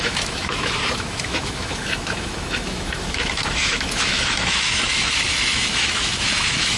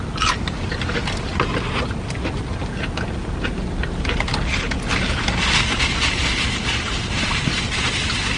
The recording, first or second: second